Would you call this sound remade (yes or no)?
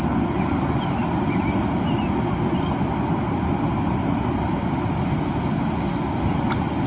no